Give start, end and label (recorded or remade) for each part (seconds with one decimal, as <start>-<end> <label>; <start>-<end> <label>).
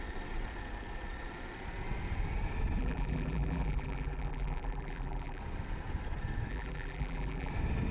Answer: 0.0-2.8 recorded; 2.8-5.4 remade; 5.4-6.5 recorded; 6.5-7.5 remade; 7.5-7.9 recorded